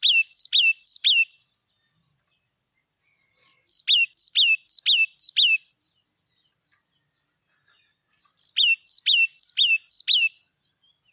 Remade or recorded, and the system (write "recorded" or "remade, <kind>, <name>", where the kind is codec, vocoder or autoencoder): recorded